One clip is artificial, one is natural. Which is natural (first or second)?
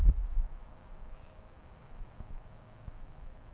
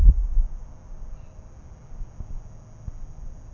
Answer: second